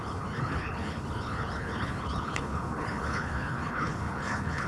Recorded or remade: remade